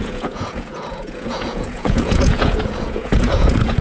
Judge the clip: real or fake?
fake